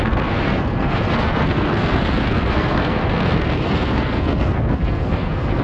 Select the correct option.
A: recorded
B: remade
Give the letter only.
B